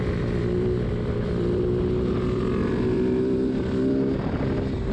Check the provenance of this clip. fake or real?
fake